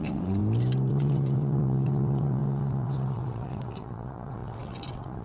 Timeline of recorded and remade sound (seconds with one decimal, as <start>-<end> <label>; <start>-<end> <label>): 0.0-0.4 remade; 0.4-0.9 recorded; 0.9-5.2 remade